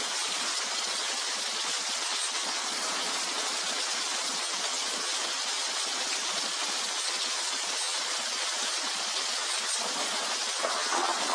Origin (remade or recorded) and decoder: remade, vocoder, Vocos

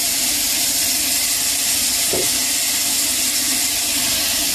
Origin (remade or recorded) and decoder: recorded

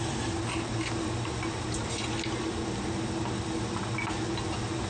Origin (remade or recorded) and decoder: recorded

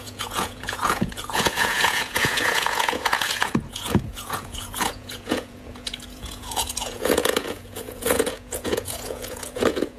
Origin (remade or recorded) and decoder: remade, vocoder, Vocos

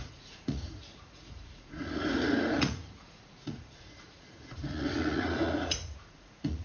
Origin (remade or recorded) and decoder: remade, vocoder, Vocos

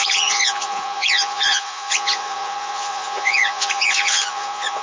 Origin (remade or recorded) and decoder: remade, vocoder, Vocos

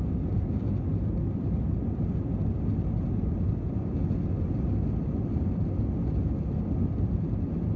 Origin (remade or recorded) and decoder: recorded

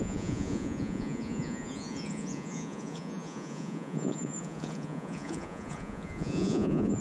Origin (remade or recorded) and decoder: remade, vocoder, Vocos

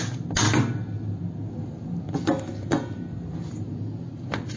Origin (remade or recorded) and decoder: recorded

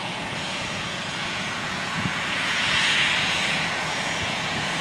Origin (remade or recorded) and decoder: remade, vocoder, Vocos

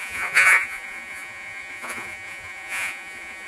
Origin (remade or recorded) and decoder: remade, vocoder, Vocos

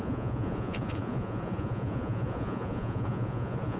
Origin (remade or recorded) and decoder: remade, vocoder, Vocos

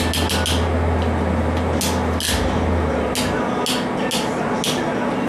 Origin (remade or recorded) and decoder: recorded